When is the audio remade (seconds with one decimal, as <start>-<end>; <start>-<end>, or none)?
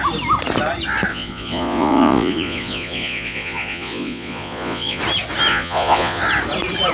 1.1-5.0; 5.5-6.2